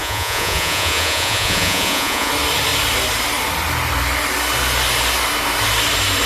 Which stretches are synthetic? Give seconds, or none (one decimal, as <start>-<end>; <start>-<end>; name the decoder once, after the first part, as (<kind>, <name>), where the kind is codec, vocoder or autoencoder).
0.0-2.3 (vocoder, Vocos)